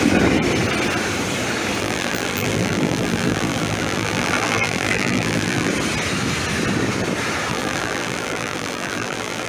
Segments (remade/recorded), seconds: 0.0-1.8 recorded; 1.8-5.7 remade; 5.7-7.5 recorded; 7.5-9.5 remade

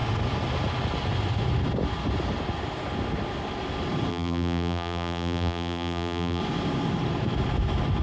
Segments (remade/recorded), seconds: 0.0-4.1 recorded; 4.1-6.4 remade; 6.4-8.0 recorded

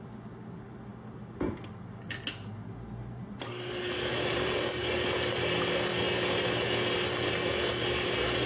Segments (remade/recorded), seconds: 0.0-4.1 recorded; 4.1-4.8 remade; 4.8-8.5 recorded

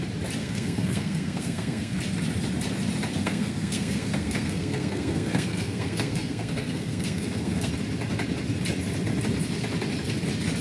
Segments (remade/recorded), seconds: 0.0-0.4 recorded; 0.4-2.0 remade; 2.0-3.2 recorded; 3.2-7.7 remade; 7.7-10.6 recorded

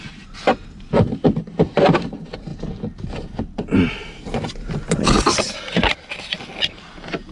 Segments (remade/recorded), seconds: 0.0-7.3 recorded

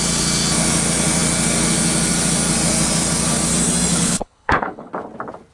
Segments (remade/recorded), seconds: 0.0-3.9 recorded; 3.9-4.9 remade; 4.9-5.5 recorded

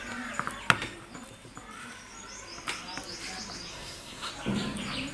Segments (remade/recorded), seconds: 0.0-3.7 recorded; 3.7-4.3 remade; 4.3-5.1 recorded